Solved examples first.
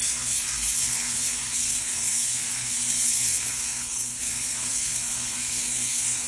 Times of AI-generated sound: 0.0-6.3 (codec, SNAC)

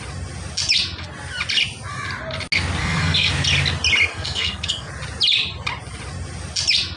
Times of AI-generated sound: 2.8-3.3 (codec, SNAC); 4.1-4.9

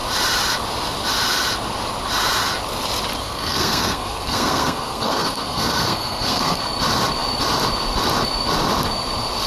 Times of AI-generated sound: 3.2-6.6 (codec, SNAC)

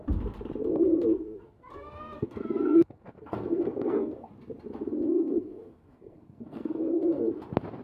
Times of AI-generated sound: 0.6-4.3 (codec, SNAC); 5.1-7.3

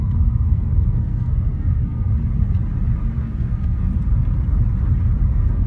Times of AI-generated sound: 0.0-2.1 (codec, SNAC); 3.2-3.9; 5.3-5.7